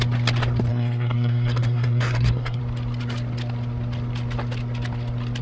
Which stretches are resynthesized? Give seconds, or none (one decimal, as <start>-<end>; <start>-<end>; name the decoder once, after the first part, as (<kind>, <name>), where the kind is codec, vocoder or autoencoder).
0.7-2.6 (codec, SNAC)